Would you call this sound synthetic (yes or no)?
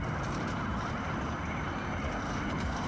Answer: no